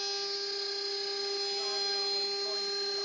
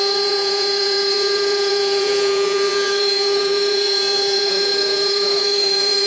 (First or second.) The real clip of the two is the first